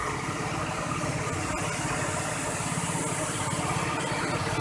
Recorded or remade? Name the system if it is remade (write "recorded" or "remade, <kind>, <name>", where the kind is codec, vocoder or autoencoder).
recorded